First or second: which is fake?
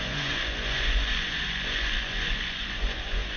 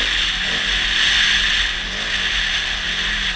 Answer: first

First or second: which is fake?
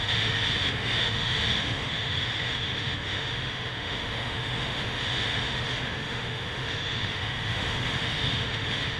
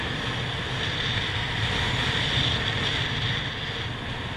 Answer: first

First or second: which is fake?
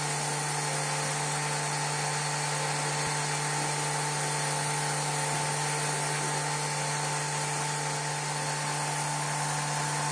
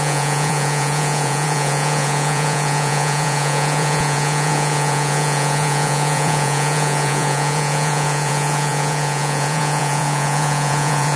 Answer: second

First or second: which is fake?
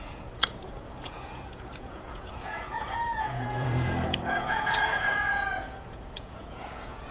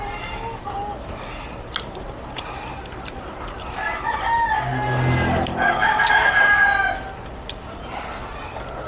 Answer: first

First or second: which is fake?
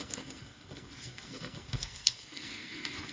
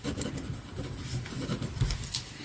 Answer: first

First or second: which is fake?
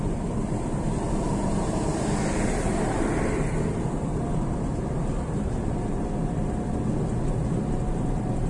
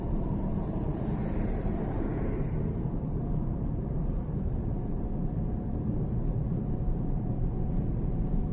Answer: second